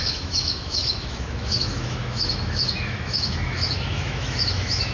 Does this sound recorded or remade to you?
remade